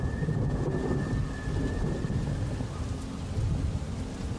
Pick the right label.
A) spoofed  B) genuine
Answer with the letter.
B